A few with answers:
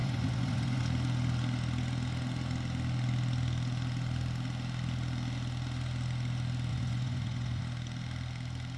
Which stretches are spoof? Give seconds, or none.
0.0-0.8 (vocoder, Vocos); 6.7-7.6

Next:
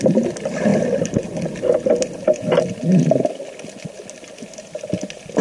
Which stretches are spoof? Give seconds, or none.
none

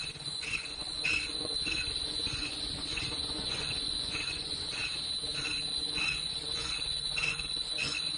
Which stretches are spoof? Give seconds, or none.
0.0-4.8 (vocoder, Vocos); 5.7-8.2

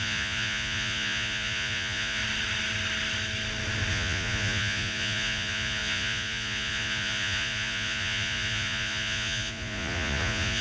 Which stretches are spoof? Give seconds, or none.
0.0-2.2 (vocoder, Vocos); 3.9-10.6